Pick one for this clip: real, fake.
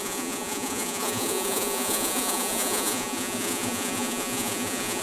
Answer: fake